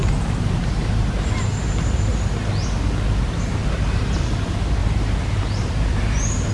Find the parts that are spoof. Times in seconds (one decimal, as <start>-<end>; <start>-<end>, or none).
0.0-2.1; 3.2-6.5